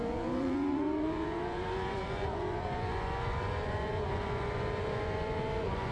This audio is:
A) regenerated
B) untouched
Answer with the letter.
A